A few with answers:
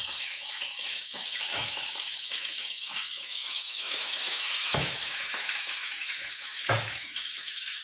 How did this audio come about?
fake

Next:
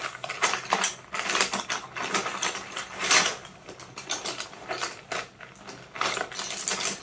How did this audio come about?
real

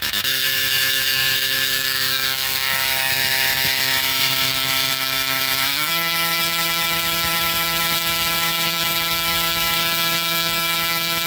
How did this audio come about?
fake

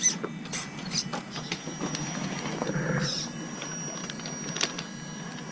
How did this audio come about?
real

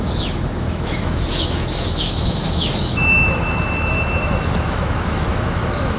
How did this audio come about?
fake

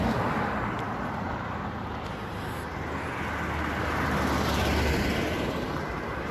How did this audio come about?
real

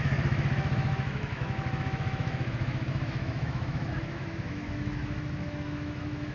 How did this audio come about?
fake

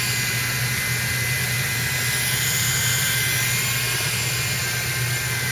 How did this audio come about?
real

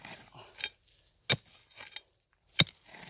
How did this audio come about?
real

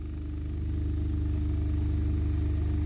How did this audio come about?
real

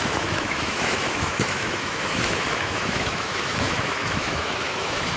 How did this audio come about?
fake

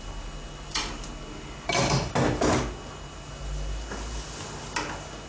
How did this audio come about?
real